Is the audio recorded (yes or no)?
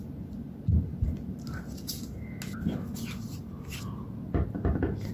yes